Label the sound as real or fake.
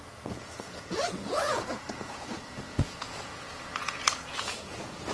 fake